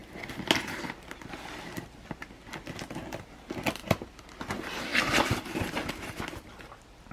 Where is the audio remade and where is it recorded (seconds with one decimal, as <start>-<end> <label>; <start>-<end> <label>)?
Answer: 0.0-4.9 recorded; 4.9-5.9 remade; 5.9-7.1 recorded